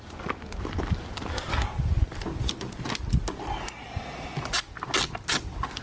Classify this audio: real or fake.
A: real